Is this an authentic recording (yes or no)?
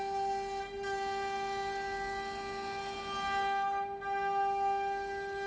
yes